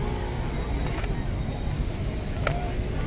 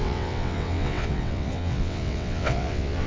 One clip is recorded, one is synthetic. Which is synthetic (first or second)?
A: second